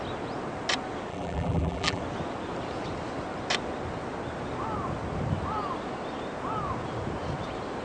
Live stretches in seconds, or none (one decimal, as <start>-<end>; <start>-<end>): 0.0-1.1; 2.0-7.8

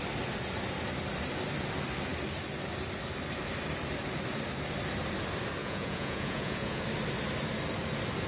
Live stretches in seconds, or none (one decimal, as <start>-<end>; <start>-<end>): 0.0-5.6; 6.8-8.3

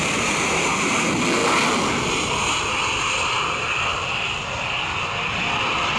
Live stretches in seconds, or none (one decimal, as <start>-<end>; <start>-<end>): 0.0-6.0